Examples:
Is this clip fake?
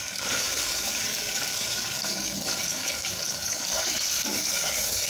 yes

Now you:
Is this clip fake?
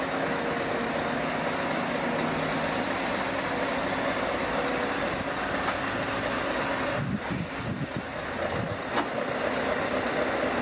no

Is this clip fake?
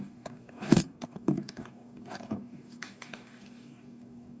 yes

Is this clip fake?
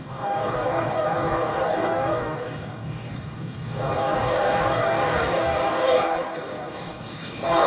yes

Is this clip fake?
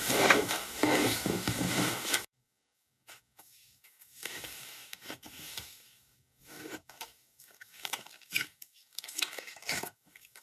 yes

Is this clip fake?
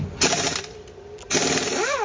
no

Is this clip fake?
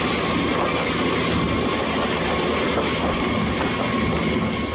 no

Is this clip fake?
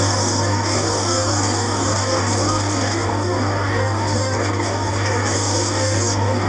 yes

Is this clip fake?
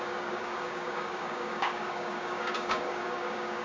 yes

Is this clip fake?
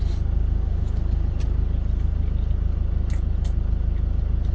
no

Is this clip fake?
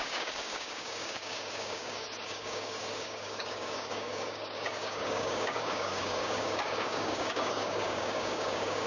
yes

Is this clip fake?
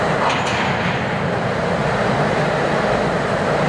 no